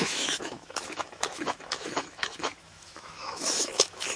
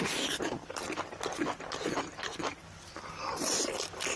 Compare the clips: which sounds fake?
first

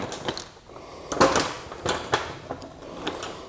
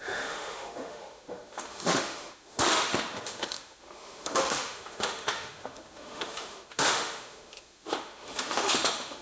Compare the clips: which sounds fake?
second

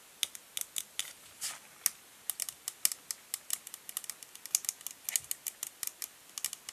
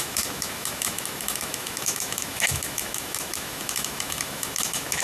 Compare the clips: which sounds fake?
second